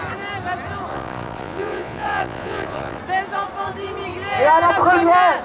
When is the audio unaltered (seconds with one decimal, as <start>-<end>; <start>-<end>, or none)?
0.0-0.9; 3.0-5.4